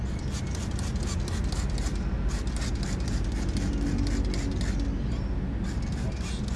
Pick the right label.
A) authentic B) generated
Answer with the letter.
A